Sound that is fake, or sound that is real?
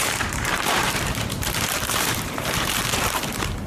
fake